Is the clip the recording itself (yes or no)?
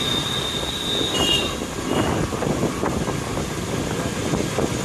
yes